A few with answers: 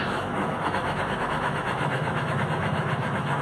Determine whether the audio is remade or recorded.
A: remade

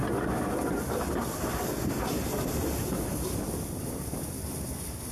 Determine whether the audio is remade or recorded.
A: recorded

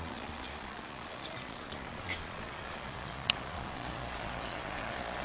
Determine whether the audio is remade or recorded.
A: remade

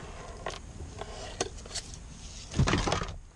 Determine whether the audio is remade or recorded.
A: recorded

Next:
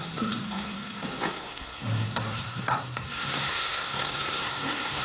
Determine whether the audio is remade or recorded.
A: remade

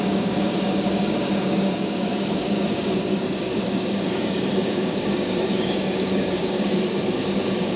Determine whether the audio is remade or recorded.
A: remade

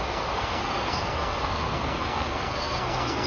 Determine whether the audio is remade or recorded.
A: remade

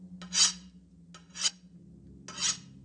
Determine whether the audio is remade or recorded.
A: recorded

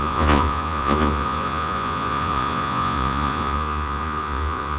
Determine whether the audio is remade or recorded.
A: remade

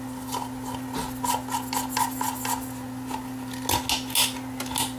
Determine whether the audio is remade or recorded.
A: recorded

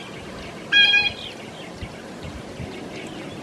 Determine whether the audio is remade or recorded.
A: recorded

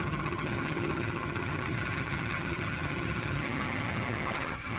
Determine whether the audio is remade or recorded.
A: remade